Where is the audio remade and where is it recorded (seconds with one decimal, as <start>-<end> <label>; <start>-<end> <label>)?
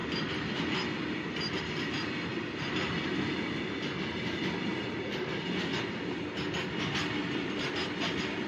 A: 0.0-8.5 recorded